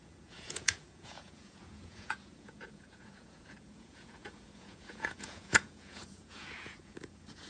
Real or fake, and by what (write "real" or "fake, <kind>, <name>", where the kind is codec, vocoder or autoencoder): fake, vocoder, Vocos